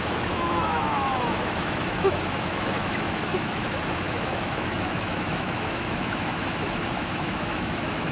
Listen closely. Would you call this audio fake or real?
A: fake